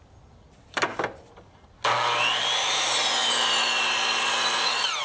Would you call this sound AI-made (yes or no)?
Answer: no